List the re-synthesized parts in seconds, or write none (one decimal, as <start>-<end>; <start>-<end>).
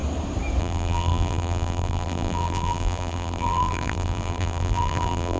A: 0.6-5.4